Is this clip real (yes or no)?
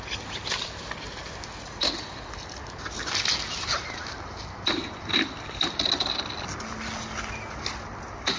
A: yes